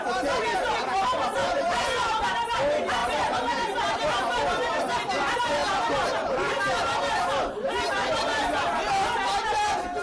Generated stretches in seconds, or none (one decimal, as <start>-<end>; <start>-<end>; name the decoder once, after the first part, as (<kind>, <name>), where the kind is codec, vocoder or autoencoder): 1.4-2.2 (vocoder, BigVGAN v2); 3.0-4.0